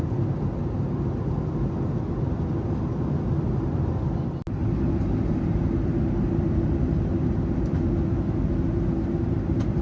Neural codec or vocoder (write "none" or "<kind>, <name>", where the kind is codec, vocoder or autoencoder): none